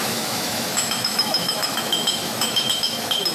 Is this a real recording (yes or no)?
no